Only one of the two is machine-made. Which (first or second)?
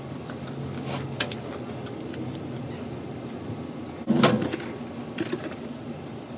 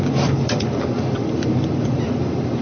second